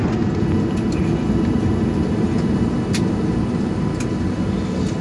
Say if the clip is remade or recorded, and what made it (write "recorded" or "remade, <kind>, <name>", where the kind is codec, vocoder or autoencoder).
recorded